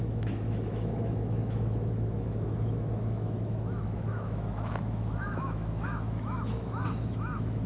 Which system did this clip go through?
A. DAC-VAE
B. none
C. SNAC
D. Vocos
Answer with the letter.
A